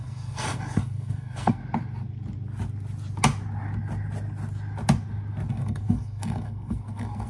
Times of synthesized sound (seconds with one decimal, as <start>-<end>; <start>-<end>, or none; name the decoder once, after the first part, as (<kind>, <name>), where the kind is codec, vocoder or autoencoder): 0.0-1.6 (codec, SNAC); 5.5-7.3